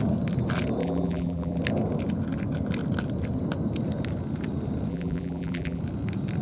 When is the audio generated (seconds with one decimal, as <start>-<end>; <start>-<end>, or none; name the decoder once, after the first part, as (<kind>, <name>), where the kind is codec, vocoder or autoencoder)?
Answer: 0.8-1.6 (vocoder, BigVGAN v2); 4.9-5.8